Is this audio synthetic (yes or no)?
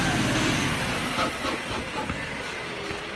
no